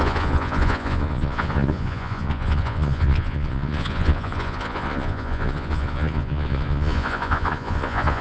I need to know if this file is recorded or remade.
remade